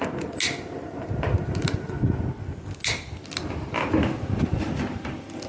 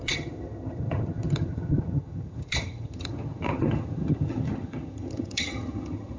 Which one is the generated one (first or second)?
second